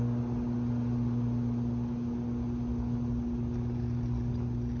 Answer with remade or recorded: recorded